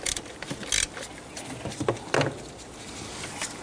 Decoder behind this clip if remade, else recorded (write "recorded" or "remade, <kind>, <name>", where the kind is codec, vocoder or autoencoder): recorded